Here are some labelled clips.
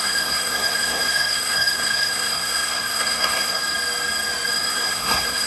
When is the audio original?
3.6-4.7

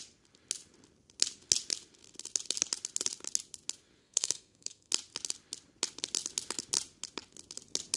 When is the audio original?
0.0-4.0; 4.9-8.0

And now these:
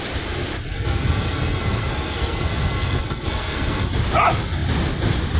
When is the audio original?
0.0-0.7; 3.9-5.4

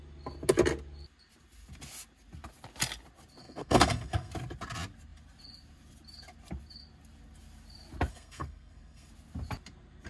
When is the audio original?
0.0-3.4; 4.3-8.1; 9.1-10.1